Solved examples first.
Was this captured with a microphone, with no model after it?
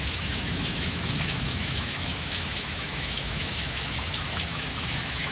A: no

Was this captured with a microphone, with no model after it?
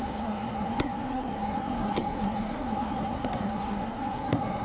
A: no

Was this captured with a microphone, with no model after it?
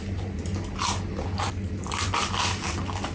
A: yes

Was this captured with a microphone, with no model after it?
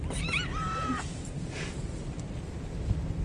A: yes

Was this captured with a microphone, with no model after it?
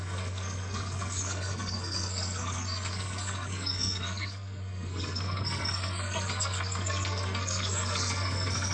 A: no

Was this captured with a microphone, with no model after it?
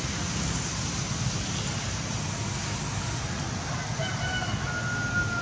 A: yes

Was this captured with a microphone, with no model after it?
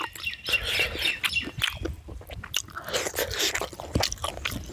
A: yes